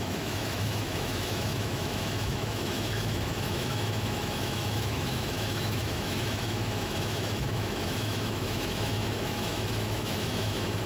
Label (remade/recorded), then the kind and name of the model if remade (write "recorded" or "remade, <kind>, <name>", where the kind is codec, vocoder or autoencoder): remade, autoencoder, DAC-VAE